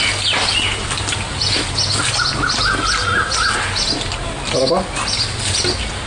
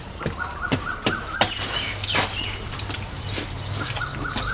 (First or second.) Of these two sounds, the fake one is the second